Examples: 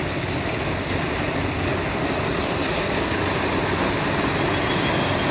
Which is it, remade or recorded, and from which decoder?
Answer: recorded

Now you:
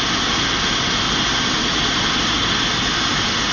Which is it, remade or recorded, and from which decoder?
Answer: recorded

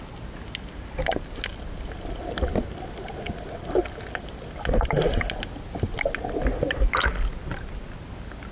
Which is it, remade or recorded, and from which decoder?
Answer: recorded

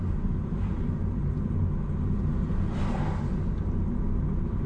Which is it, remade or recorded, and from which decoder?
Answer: recorded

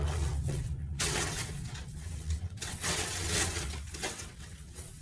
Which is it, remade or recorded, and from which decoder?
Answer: remade, vocoder, WaveNeXt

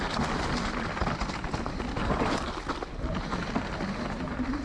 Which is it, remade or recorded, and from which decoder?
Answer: recorded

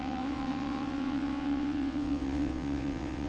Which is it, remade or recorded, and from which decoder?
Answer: remade, vocoder, WaveNeXt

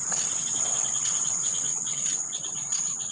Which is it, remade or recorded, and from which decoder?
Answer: remade, vocoder, WaveNeXt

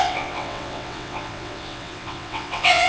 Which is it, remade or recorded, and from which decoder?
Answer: remade, vocoder, WaveNeXt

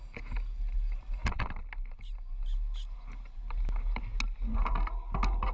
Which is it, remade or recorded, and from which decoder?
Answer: recorded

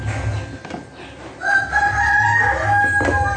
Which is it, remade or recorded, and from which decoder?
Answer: recorded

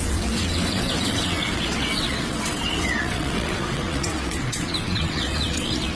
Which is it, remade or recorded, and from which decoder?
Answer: remade, vocoder, WaveNeXt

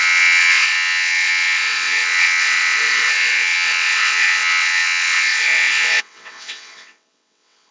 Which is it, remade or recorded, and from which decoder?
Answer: remade, vocoder, WaveNeXt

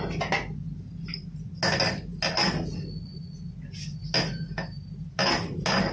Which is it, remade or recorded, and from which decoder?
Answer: recorded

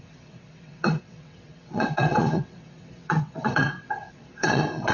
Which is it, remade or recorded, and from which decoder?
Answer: remade, vocoder, WaveNeXt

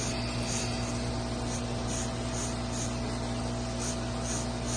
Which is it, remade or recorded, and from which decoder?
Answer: recorded